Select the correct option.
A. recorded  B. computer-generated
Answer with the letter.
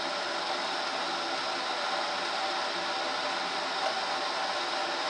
A